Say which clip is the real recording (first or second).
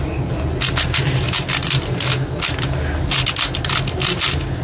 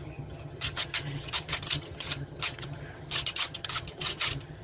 first